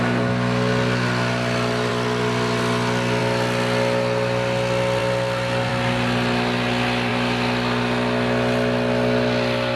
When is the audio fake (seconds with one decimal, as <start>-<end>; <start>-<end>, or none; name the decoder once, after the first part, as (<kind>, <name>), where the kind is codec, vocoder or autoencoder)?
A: none